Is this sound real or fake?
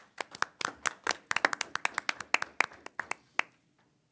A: real